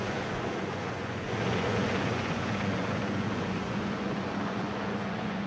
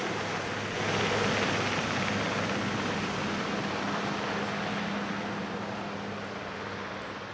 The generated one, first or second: first